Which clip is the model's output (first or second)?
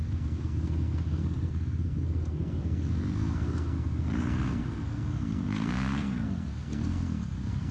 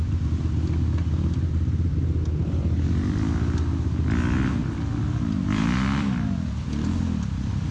first